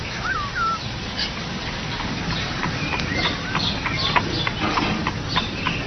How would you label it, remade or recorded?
recorded